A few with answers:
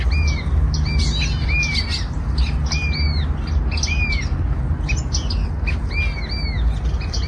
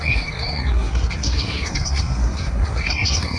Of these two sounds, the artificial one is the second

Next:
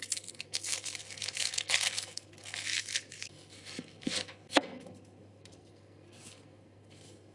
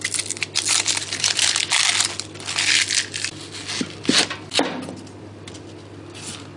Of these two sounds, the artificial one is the first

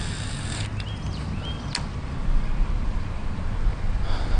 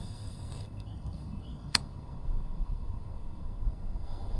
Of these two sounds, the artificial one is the second